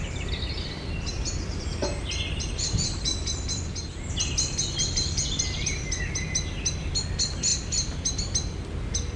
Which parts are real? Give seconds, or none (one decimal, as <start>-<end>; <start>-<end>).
0.0-9.2